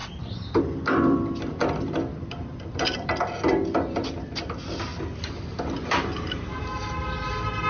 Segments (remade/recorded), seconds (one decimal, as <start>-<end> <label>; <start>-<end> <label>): 0.0-7.7 recorded